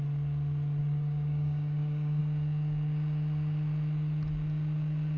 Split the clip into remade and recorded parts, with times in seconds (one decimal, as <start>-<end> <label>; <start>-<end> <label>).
0.0-0.8 recorded; 0.8-2.2 remade; 2.2-5.2 recorded